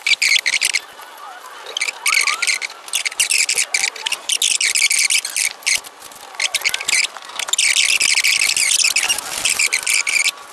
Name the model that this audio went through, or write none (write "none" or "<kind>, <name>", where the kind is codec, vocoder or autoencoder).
none